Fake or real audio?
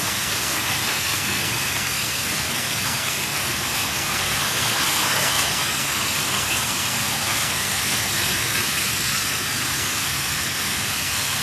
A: fake